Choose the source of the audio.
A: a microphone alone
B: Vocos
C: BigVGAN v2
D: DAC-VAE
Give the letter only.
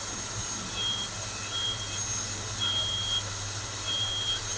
A